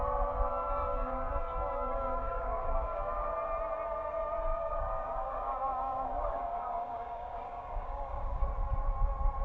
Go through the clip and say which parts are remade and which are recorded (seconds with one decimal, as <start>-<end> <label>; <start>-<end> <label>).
0.0-0.5 recorded; 0.5-3.3 remade; 3.3-4.5 recorded; 4.5-8.4 remade; 8.4-9.4 recorded